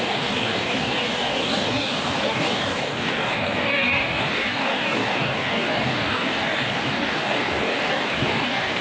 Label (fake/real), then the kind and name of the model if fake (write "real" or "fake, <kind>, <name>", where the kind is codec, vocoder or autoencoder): fake, codec, DAC